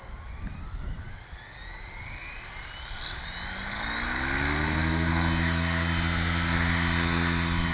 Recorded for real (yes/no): yes